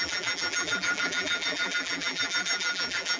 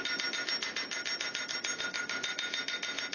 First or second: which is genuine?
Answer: second